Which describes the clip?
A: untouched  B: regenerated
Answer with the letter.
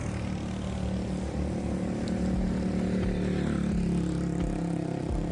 A